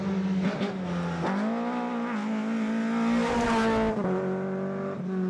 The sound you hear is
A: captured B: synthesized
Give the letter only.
A